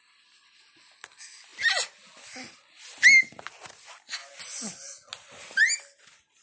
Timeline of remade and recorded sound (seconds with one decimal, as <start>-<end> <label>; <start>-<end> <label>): 0.0-6.4 recorded

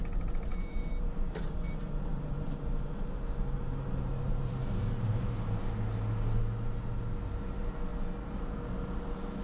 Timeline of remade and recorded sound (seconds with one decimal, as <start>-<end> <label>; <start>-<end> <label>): 0.0-0.5 recorded; 0.5-5.3 remade; 5.3-9.4 recorded

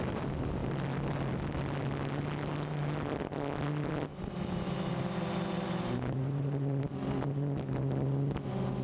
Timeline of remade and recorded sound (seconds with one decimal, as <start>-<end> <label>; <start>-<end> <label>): 0.0-4.1 recorded; 4.1-6.9 remade; 6.9-8.8 recorded

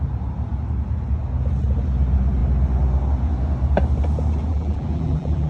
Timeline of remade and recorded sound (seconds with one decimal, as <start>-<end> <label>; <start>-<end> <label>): 0.0-4.5 recorded; 4.5-5.5 remade

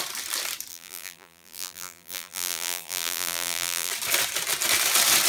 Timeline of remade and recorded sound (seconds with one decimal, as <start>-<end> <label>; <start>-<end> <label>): 0.0-0.7 recorded; 0.7-3.9 remade; 3.9-5.3 recorded